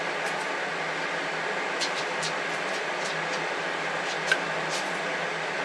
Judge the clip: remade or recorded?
recorded